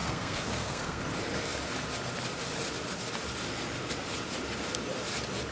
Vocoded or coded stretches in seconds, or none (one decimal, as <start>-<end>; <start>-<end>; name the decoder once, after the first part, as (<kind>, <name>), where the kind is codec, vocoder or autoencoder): 0.0-1.0 (codec, SNAC)